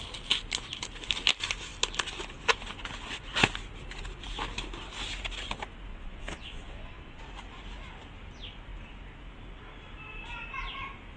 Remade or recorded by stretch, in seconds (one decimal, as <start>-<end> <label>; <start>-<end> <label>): 0.0-5.9 recorded; 5.9-7.2 remade; 7.2-11.2 recorded